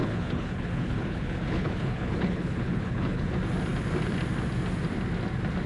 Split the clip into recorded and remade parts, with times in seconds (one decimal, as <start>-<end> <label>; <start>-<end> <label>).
0.0-3.3 remade; 3.3-5.7 recorded